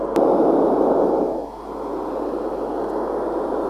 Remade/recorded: recorded